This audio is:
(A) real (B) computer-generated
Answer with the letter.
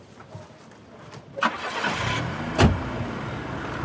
A